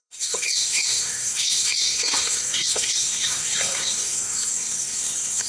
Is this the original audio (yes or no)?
no